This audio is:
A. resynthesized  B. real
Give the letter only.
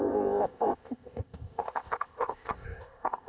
A